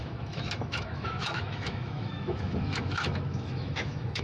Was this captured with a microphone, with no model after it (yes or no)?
no